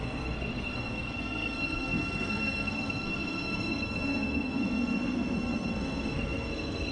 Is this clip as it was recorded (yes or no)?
no